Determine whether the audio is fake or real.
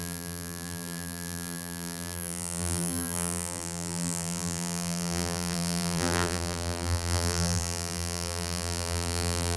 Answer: fake